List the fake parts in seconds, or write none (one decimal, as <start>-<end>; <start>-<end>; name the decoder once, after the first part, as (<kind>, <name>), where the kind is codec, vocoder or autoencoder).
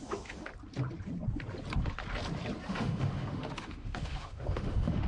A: 0.0-0.5 (autoencoder, DAC-VAE); 2.7-5.1